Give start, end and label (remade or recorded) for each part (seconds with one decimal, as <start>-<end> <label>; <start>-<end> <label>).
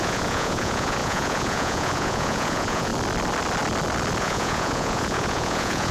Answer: 0.0-2.9 remade; 2.9-4.2 recorded; 4.2-5.9 remade